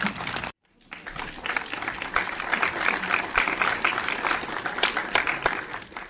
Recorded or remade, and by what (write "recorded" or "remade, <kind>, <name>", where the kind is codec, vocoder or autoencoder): recorded